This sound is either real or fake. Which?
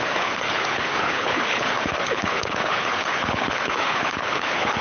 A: fake